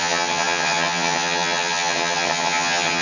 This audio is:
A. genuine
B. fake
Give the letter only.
B